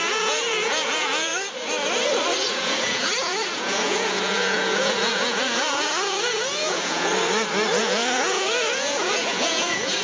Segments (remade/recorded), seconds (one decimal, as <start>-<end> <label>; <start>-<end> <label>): 0.0-1.3 remade; 1.3-2.5 recorded; 2.5-7.1 remade; 7.1-7.8 recorded; 7.8-10.0 remade